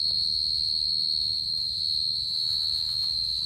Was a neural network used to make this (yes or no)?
yes